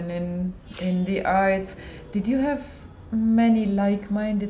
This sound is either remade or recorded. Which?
recorded